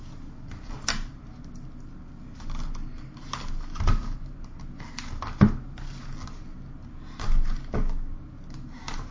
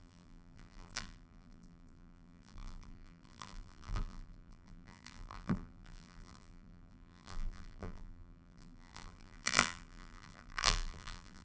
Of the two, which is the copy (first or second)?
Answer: second